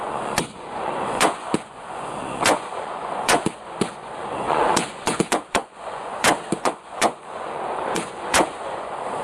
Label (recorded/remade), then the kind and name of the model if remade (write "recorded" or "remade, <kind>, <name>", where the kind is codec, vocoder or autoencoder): remade, vocoder, Vocos